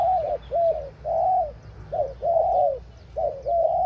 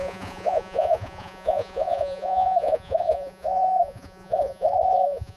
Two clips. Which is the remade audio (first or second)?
second